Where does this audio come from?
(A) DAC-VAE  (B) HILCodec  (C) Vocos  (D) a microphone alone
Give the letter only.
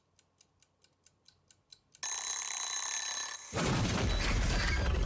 D